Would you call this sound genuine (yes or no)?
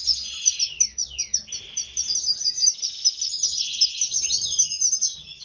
yes